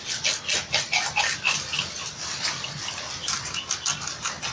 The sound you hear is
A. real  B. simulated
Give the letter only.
A